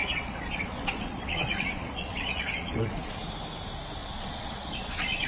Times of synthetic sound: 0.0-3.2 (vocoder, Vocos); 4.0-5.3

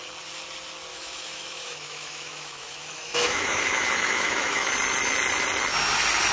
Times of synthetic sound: 0.9-4.7 (autoencoder, DAC-VAE)

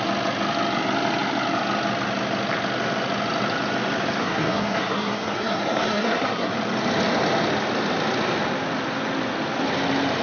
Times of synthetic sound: 4.2-6.5 (codec, SNAC)

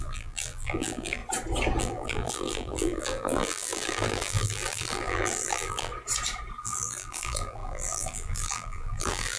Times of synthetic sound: 0.0-1.2 (vocoder, BigVGAN v2); 1.8-5.9; 6.6-9.4

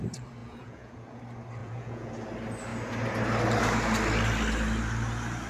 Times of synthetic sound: 0.4-1.2 (vocoder, Vocos); 1.6-2.1

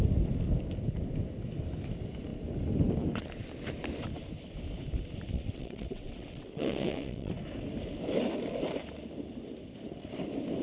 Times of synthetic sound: 5.3-7.3 (vocoder, WaveNeXt)